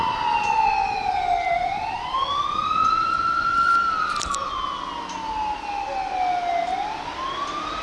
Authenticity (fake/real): real